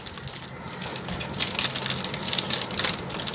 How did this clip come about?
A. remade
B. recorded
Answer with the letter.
B